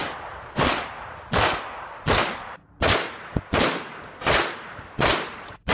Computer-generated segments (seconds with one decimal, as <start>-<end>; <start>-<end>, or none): none